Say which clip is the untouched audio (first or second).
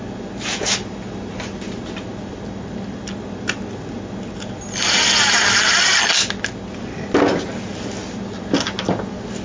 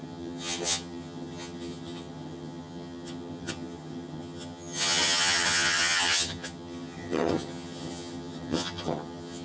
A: first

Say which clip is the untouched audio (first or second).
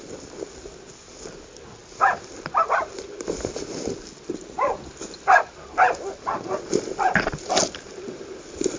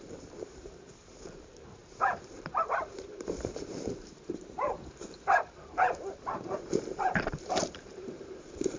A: first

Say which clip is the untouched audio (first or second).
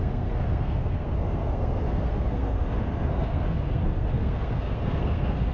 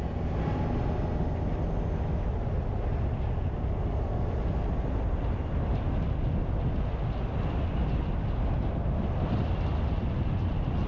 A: second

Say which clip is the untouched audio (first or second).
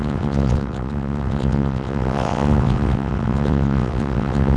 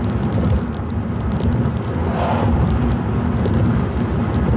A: second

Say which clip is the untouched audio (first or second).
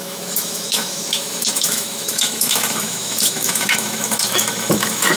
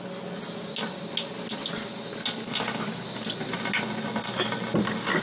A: second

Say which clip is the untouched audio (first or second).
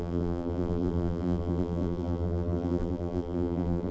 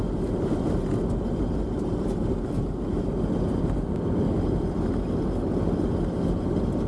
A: second